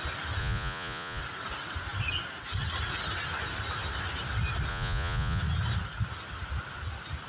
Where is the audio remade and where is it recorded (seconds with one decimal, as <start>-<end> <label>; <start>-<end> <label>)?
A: 0.0-0.4 recorded; 0.4-1.2 remade; 1.2-4.7 recorded; 4.7-5.4 remade; 5.4-7.3 recorded